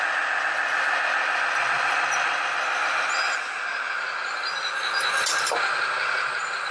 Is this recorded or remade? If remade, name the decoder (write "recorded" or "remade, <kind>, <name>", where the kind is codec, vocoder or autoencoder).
remade, vocoder, BigVGAN v2